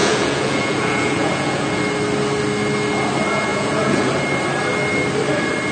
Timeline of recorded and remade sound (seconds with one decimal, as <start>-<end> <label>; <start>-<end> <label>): 0.0-1.8 remade; 1.8-3.5 recorded; 3.5-4.1 remade; 4.1-5.7 recorded